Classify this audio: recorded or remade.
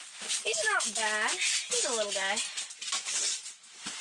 recorded